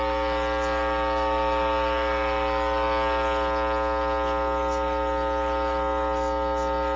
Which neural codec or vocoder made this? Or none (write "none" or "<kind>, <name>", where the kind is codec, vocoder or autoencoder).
none